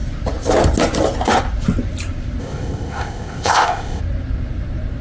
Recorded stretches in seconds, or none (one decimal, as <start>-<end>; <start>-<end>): 0.0-2.4; 4.0-5.0